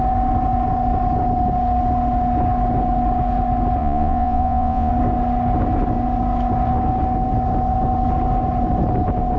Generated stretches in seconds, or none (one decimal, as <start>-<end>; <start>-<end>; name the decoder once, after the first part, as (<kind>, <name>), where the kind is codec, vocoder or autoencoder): 3.8-4.9 (vocoder, Vocos)